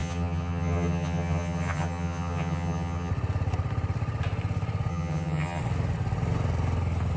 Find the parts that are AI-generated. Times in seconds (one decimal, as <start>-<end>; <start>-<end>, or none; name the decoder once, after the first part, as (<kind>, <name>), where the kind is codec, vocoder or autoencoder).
0.0-3.1 (vocoder, HiFi-GAN); 4.9-5.6